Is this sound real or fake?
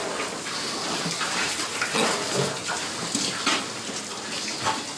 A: real